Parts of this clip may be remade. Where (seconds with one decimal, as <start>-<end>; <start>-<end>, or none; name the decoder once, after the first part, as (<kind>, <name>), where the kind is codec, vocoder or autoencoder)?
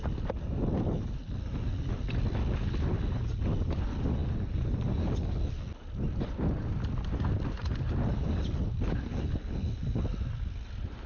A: none